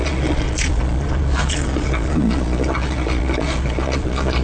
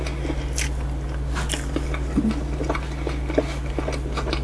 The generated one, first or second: first